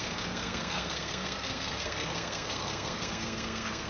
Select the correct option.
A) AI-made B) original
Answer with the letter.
A